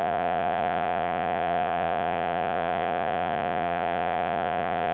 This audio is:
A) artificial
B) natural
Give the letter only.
A